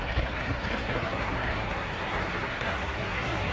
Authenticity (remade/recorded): remade